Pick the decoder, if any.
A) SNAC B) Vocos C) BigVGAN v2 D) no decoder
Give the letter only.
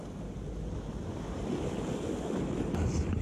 D